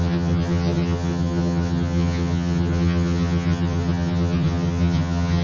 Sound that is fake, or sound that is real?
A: fake